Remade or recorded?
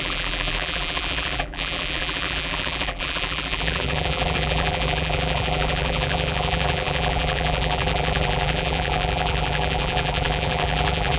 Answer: remade